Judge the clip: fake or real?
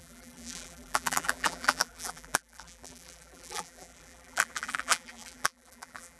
fake